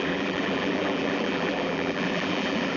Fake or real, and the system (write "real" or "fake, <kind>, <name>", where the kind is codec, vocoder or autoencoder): fake, vocoder, BigVGAN v2